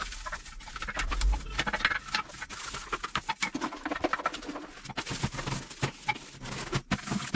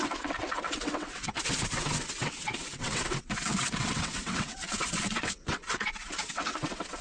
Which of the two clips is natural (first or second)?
first